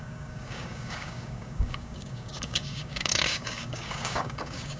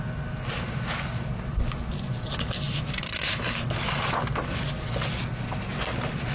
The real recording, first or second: second